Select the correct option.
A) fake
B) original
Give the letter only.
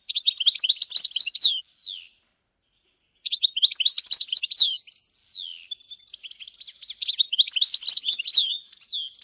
B